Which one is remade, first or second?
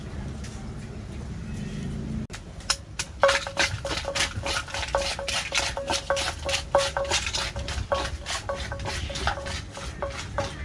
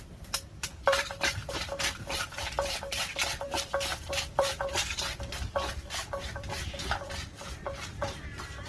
second